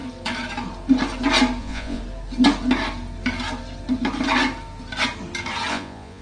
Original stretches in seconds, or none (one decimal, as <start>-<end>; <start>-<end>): 0.0-1.6; 2.0-5.7